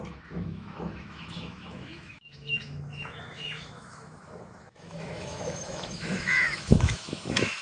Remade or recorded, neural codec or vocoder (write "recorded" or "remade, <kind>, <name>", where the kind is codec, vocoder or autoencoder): remade, autoencoder, DAC-VAE